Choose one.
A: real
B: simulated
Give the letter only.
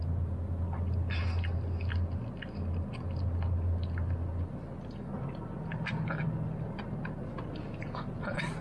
A